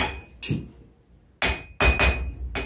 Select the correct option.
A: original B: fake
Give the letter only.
A